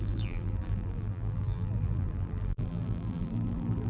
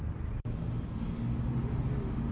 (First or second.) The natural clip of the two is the second